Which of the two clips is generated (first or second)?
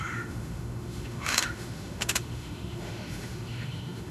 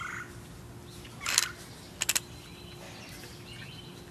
first